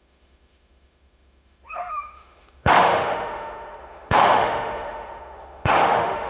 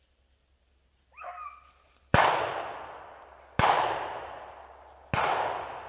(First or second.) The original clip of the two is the second